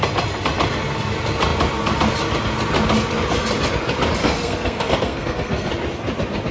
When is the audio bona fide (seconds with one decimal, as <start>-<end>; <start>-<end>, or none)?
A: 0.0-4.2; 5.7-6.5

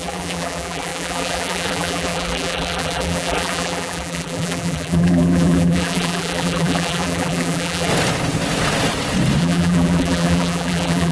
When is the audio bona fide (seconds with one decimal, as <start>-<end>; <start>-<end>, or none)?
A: 7.9-9.4

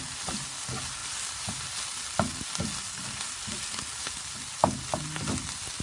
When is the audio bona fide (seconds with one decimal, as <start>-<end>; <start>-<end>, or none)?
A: 0.0-5.8

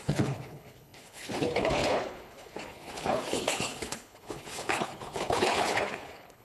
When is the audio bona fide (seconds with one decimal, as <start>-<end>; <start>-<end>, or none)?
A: none